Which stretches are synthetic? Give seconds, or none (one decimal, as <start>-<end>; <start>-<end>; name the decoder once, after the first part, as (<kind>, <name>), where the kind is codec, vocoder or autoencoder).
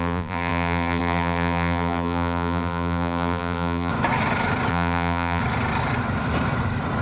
0.0-3.9 (vocoder, BigVGAN v2); 4.7-5.4